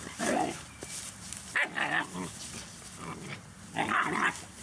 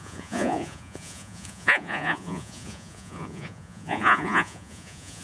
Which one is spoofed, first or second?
second